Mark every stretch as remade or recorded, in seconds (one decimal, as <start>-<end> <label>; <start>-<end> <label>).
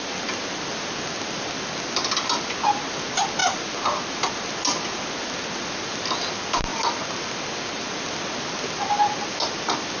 0.0-10.0 recorded